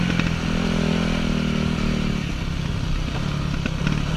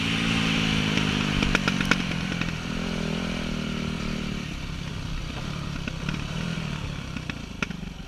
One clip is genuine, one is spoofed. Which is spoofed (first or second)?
second